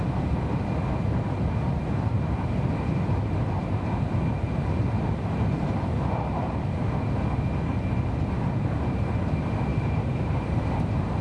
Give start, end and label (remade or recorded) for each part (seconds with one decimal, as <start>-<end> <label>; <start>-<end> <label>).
0.0-9.7 recorded; 9.7-11.2 remade